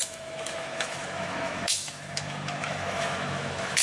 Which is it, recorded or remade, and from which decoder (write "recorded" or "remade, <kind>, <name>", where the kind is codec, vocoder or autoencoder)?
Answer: remade, autoencoder, DAC-VAE